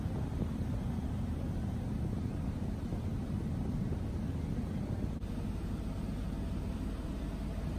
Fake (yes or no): no